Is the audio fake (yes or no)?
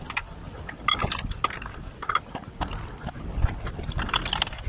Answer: yes